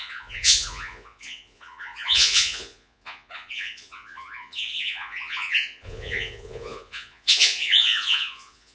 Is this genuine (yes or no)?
no